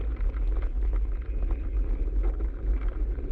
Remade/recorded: recorded